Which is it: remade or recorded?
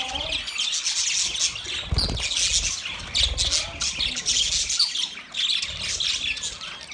recorded